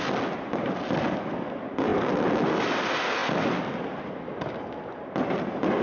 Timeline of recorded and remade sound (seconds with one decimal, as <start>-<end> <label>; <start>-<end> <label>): 0.0-5.8 recorded